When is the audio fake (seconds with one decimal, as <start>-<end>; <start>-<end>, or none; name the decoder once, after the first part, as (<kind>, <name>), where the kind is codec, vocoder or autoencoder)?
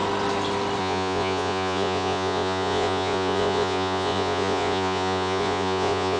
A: 0.8-6.2 (vocoder, Vocos)